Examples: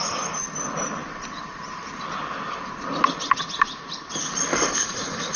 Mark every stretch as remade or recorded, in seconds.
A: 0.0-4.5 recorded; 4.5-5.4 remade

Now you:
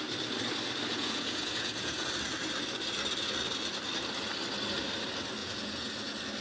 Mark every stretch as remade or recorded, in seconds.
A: 0.0-0.9 recorded; 0.9-2.1 remade; 2.1-5.4 recorded; 5.4-5.9 remade; 5.9-6.4 recorded

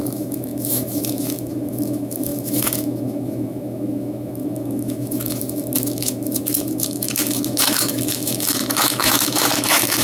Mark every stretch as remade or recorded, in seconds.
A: 0.0-10.0 remade

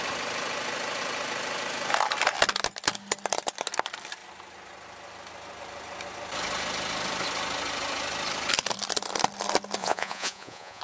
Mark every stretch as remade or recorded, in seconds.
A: 0.0-9.8 recorded; 9.8-10.8 remade

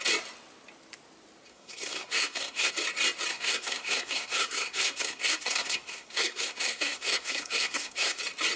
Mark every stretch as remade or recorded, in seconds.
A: 0.0-1.5 recorded; 1.5-2.7 remade; 2.7-3.3 recorded; 3.3-8.2 remade; 8.2-8.6 recorded

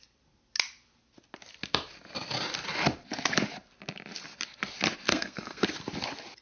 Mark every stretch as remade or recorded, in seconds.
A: 0.0-5.1 recorded; 5.1-5.7 remade; 5.7-6.4 recorded

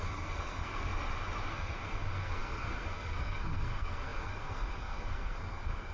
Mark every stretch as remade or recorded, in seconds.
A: 0.0-0.9 remade; 0.9-1.5 recorded; 1.5-5.9 remade